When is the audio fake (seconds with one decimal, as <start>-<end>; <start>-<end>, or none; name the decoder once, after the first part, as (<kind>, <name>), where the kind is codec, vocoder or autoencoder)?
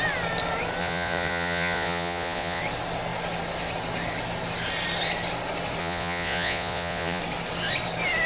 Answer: 0.8-2.6 (vocoder, Vocos); 5.8-7.2